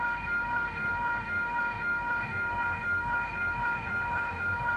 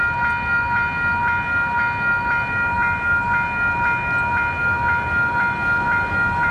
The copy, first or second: first